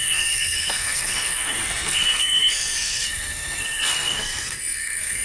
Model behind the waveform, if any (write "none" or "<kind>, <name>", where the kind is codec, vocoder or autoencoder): codec, SNAC